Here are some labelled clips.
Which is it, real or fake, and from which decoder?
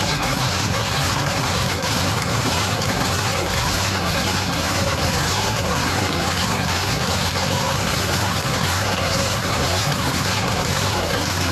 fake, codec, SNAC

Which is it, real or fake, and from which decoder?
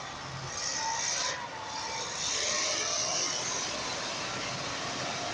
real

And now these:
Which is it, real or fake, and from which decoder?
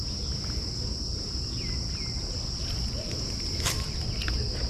real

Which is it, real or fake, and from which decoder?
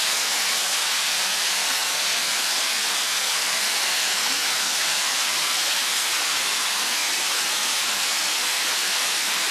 fake, codec, SNAC